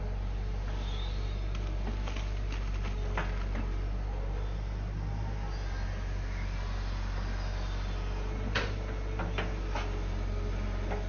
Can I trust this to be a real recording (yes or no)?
yes